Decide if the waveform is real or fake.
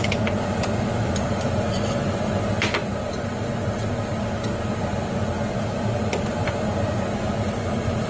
real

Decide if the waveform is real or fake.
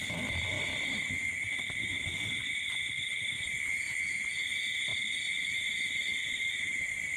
real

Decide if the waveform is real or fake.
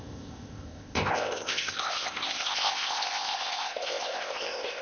fake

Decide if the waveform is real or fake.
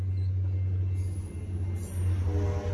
real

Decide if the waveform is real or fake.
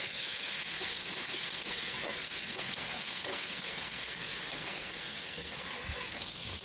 fake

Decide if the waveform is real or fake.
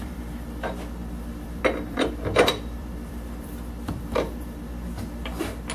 fake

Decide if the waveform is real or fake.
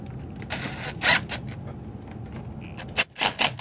real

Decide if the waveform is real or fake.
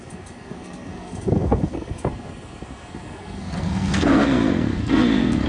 fake